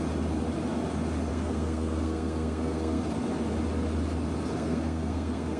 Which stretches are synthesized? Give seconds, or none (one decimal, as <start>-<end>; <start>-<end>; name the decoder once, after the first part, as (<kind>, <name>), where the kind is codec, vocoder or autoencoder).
1.3-3.0 (codec, SNAC); 4.5-5.6